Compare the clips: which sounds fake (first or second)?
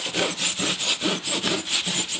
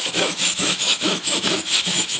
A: second